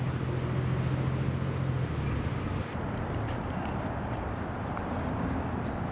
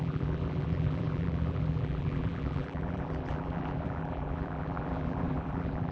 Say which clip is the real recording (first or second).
first